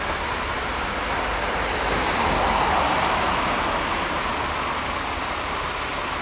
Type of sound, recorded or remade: recorded